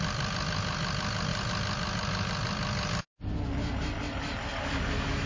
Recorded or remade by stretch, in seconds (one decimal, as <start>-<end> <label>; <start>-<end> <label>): 0.0-5.3 recorded